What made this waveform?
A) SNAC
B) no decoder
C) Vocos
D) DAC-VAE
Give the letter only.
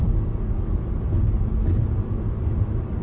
B